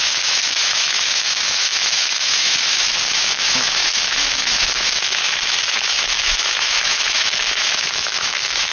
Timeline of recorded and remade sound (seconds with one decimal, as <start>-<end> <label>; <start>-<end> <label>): 0.0-8.7 remade